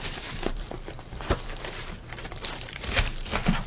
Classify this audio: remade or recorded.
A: remade